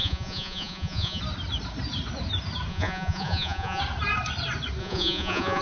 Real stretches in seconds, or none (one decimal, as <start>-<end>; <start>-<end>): 1.2-2.7; 3.8-4.8